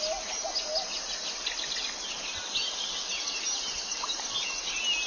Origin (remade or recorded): recorded